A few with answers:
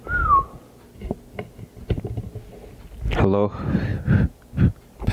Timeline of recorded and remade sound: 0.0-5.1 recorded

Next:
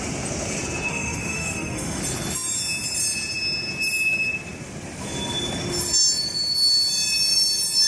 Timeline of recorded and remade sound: 0.0-0.9 recorded; 0.9-2.0 remade; 2.0-7.9 recorded

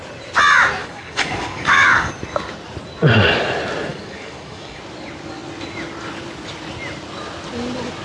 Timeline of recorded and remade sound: 0.0-0.8 recorded; 0.8-2.1 remade; 2.1-3.9 recorded; 3.9-4.8 remade; 4.8-8.0 recorded

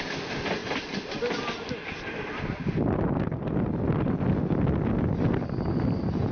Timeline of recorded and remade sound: 0.0-6.3 recorded